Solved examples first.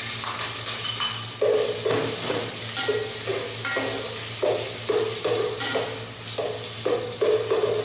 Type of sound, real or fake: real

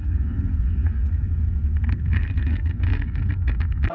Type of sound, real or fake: fake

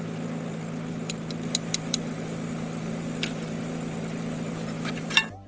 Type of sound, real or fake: fake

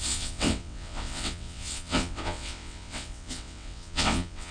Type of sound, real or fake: fake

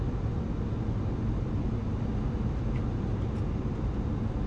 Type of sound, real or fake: real